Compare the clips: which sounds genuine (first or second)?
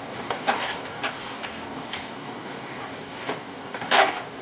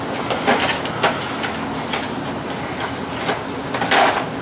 second